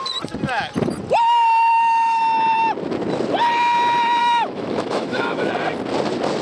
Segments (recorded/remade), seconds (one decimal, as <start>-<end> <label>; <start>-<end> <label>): 0.0-1.7 recorded; 1.7-2.2 remade; 2.2-4.2 recorded; 4.2-5.5 remade; 5.5-6.4 recorded